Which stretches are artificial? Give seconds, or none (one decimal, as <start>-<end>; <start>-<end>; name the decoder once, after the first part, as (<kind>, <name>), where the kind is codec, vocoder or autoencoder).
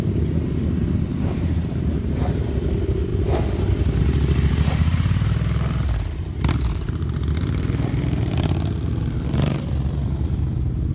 0.0-3.1 (vocoder, BigVGAN v2); 4.0-10.9